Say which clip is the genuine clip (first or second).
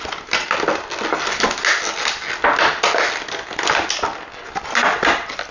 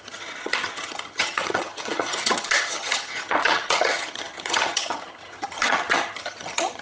first